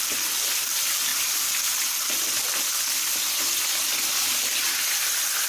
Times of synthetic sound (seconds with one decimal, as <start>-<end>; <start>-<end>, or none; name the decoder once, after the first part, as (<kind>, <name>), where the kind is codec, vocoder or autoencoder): none